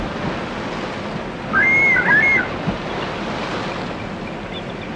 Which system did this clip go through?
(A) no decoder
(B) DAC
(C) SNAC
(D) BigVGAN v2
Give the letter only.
A